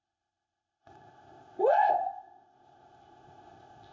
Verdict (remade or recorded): remade